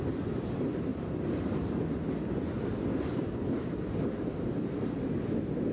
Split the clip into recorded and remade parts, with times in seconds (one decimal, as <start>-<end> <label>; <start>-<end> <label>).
0.0-5.7 recorded